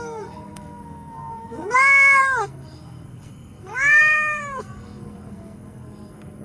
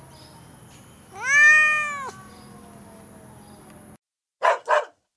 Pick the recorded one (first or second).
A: second